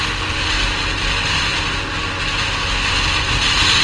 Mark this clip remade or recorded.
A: recorded